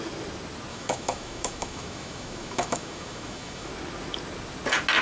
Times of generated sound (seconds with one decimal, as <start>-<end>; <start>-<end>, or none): 0.7-3.7